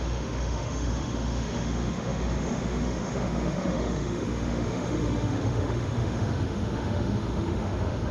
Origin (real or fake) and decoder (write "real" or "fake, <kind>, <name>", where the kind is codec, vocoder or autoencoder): fake, autoencoder, DAC-VAE